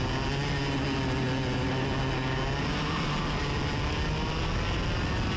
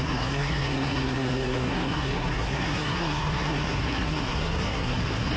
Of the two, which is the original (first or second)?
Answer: first